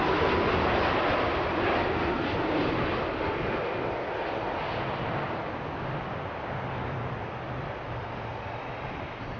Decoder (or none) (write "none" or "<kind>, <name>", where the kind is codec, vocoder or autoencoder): none